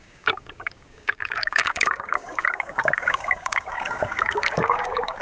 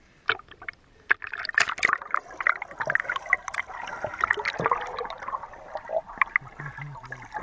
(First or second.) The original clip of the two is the second